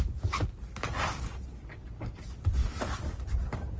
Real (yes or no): yes